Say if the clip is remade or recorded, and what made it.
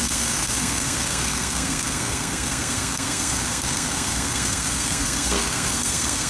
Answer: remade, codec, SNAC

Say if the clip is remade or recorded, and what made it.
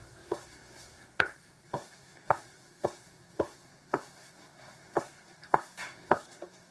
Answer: remade, codec, SNAC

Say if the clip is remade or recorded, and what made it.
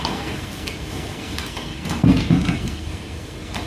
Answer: remade, codec, SNAC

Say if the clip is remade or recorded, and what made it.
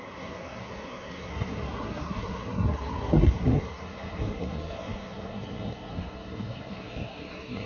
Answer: remade, codec, SNAC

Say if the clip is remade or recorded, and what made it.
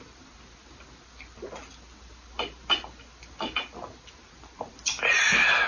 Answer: recorded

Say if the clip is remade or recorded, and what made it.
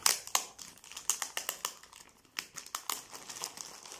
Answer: recorded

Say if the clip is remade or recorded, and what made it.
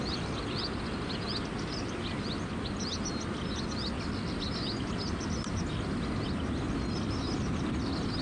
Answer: recorded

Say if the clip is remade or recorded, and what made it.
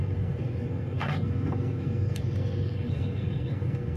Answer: remade, codec, SNAC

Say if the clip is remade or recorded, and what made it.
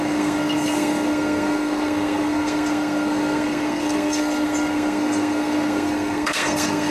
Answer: remade, codec, SNAC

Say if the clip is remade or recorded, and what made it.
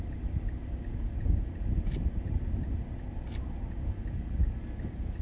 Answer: recorded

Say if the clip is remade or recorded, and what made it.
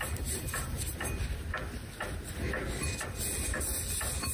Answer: recorded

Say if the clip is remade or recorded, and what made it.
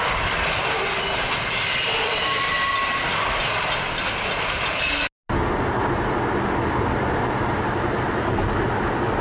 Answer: recorded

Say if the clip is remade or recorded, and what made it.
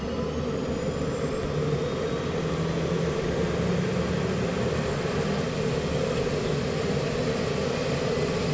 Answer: recorded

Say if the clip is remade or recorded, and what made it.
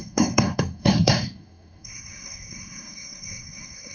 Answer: remade, codec, SNAC